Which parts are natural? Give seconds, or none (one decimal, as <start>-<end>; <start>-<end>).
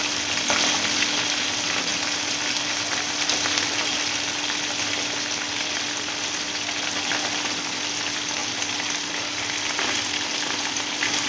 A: 0.0-11.3